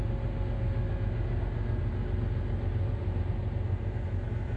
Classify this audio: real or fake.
real